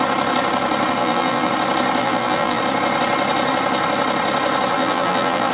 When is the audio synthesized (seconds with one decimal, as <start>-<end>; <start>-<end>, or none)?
1.0-1.5; 2.0-2.6; 4.7-5.5